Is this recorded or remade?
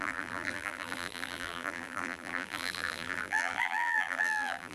remade